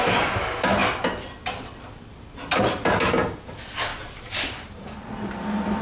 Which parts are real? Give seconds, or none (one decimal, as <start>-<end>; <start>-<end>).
0.0-3.9; 5.1-5.8